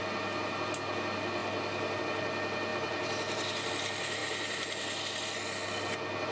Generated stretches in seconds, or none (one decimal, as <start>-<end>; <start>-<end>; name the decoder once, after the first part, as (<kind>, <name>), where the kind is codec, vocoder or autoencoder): 2.7-3.7 (vocoder, BigVGAN v2); 4.2-5.0